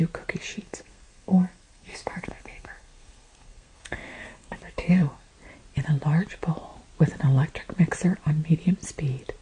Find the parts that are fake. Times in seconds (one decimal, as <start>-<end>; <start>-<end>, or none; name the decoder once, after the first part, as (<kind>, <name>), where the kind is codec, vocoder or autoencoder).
0.5-5.3 (codec, SNAC)